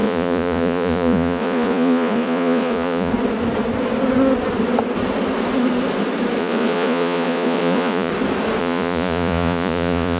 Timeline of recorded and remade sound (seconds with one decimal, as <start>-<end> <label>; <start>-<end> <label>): 0.0-3.1 remade; 3.1-6.4 recorded; 6.4-8.1 remade; 8.1-8.6 recorded; 8.6-10.2 remade